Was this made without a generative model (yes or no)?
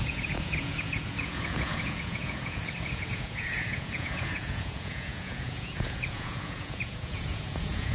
no